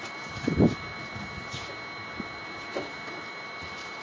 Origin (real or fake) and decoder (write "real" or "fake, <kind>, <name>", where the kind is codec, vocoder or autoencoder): real